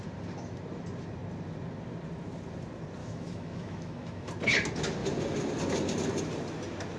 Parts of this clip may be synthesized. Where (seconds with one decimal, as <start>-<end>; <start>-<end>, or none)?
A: 3.0-4.3